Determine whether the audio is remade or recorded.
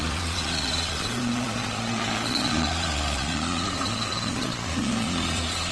remade